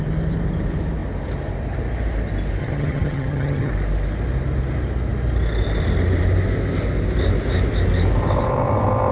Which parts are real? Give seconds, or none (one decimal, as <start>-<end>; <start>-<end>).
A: 0.0-2.6; 3.7-9.1